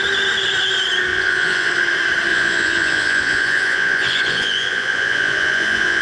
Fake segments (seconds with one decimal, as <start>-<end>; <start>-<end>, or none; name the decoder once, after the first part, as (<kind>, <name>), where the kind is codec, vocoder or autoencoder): 1.1-1.7 (vocoder, Vocos); 2.3-6.0